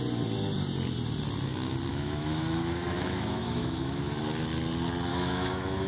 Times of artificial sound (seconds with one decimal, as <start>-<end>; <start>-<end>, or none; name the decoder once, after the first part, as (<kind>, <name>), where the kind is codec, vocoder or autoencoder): 1.9-4.2 (autoencoder, DAC-VAE); 5.1-5.9